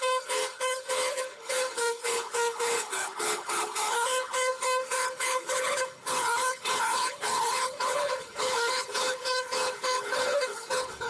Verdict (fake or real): fake